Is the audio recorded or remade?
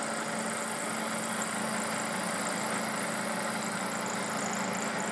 recorded